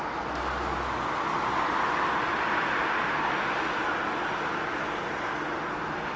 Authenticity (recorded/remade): recorded